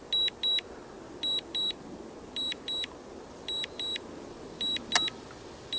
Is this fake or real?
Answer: real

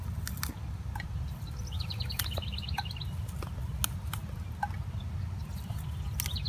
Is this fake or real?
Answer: real